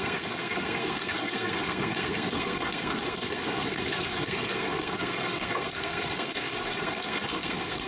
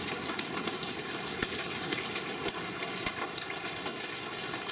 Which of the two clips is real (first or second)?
second